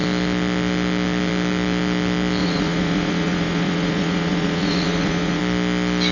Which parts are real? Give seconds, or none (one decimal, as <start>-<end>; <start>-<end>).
0.0-2.4; 5.4-6.1